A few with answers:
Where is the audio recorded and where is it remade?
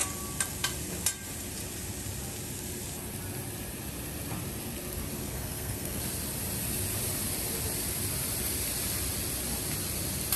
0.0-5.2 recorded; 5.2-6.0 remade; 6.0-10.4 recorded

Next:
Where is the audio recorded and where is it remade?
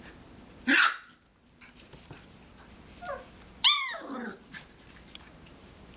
0.0-6.0 recorded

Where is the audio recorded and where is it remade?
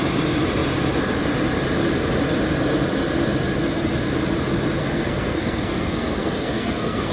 0.0-4.8 recorded; 4.8-7.1 remade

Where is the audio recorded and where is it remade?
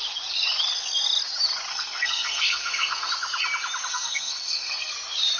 0.0-1.7 recorded; 1.7-3.1 remade; 3.1-3.9 recorded; 3.9-4.9 remade; 4.9-5.4 recorded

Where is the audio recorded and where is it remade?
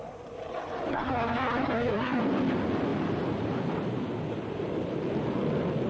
0.0-0.9 recorded; 0.9-2.2 remade; 2.2-5.9 recorded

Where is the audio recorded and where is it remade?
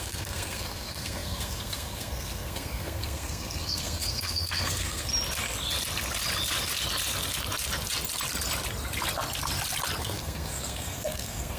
0.0-5.1 remade; 5.1-10.0 recorded; 10.0-11.6 remade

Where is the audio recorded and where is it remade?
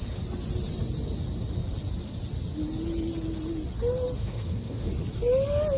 0.0-4.2 recorded; 4.2-4.9 remade; 4.9-5.8 recorded